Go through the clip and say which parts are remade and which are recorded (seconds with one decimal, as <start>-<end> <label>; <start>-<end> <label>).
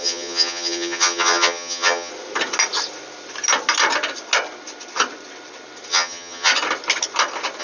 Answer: 0.0-2.1 remade; 2.1-5.9 recorded; 5.9-6.5 remade; 6.5-7.6 recorded